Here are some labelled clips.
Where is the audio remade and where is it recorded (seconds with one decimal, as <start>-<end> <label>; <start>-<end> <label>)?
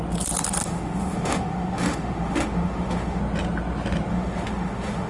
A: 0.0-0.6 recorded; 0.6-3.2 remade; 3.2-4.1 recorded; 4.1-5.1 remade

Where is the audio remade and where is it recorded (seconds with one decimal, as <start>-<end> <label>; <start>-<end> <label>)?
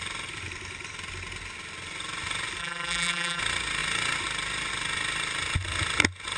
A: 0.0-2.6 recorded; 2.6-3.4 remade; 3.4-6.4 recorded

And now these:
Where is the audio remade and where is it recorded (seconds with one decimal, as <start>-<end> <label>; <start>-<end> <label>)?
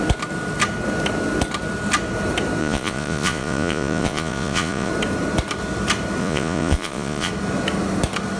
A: 0.0-2.6 recorded; 2.6-4.9 remade; 4.9-6.2 recorded; 6.2-7.3 remade; 7.3-8.4 recorded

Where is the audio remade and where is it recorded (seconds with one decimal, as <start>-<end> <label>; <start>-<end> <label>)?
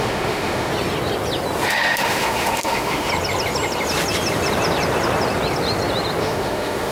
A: 0.0-0.7 remade; 0.7-1.7 recorded; 1.7-3.1 remade; 3.1-6.2 recorded; 6.2-6.9 remade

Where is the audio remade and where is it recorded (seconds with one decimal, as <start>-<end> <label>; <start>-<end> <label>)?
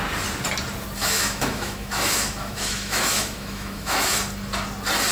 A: 0.0-1.0 recorded; 1.0-4.1 remade; 4.1-5.1 recorded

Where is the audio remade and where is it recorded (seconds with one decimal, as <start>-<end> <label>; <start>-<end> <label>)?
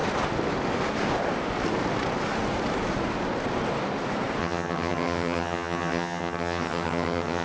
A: 0.0-4.4 recorded; 4.4-7.4 remade